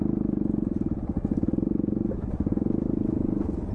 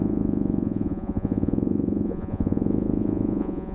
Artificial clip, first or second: second